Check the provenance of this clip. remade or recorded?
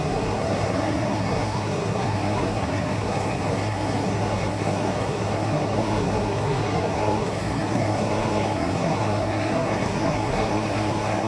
remade